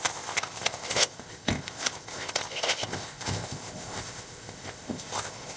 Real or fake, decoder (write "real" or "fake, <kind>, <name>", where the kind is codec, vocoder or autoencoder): fake, codec, ZipCodec